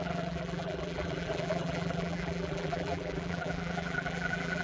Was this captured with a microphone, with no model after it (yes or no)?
no